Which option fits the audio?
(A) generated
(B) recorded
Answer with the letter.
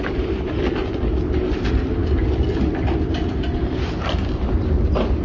B